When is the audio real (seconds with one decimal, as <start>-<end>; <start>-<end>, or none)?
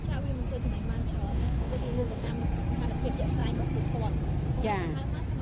0.0-1.3; 2.3-5.4